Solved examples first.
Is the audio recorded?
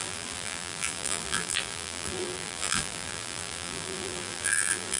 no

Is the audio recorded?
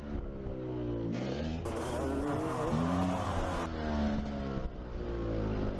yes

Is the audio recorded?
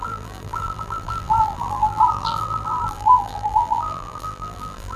no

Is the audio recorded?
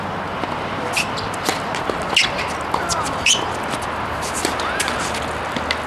yes